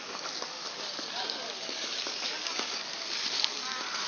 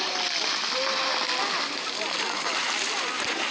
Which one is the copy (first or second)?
first